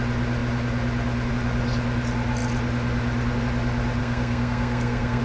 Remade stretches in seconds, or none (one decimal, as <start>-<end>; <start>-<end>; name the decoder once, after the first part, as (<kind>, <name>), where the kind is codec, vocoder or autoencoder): 4.0-5.2 (codec, SNAC)